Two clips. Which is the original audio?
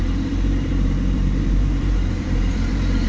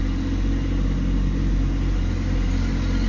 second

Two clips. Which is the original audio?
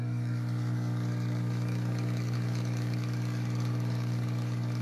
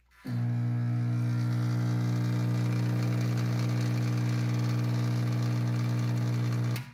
second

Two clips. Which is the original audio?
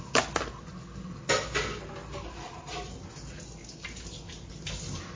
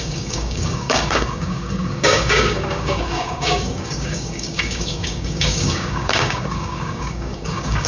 first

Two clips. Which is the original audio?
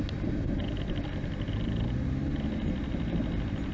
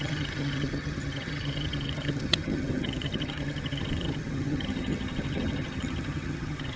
first